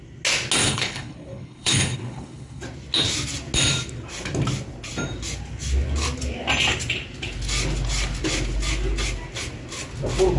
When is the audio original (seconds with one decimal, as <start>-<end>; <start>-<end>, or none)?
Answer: 0.0-0.6; 2.6-10.4